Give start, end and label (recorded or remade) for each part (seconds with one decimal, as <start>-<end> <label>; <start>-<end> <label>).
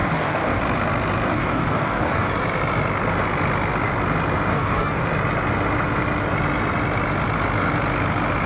0.0-0.6 remade; 0.6-1.3 recorded; 1.3-2.3 remade; 2.3-4.5 recorded; 4.5-5.0 remade; 5.0-8.5 recorded